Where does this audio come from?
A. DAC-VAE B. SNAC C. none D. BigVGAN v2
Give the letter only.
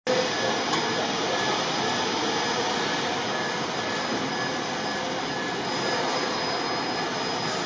C